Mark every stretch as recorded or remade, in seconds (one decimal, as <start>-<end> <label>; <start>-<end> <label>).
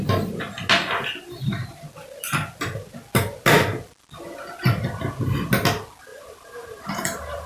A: 0.0-6.1 recorded; 6.1-7.5 remade